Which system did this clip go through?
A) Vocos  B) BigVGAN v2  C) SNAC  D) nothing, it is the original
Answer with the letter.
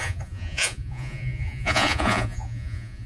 A